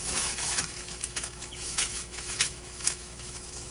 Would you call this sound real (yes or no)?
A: no